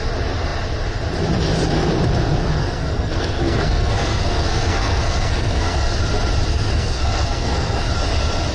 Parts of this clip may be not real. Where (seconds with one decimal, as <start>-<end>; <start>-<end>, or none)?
2.4-6.0; 6.5-7.9